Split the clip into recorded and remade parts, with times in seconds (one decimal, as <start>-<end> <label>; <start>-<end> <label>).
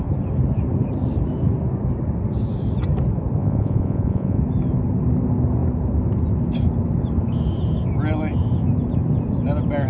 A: 0.0-3.4 recorded; 3.4-4.4 remade; 4.4-9.9 recorded